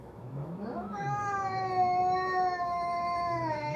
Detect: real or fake fake